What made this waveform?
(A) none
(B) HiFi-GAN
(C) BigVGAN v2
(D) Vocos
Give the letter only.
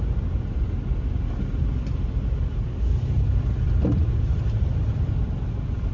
A